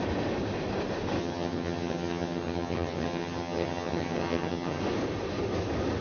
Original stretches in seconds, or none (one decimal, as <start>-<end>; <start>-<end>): 0.0-1.2; 4.8-6.0